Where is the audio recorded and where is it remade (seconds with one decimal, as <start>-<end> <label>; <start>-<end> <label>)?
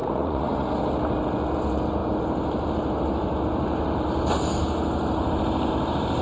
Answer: 0.0-0.7 remade; 0.7-6.2 recorded